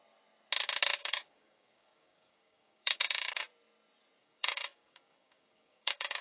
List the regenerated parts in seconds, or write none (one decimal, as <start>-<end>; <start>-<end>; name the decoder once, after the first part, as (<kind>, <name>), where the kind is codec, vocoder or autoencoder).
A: 1.0-3.5 (codec, DAC); 4.2-6.2